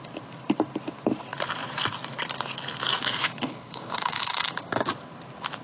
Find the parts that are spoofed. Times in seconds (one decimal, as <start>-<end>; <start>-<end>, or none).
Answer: 3.0-4.9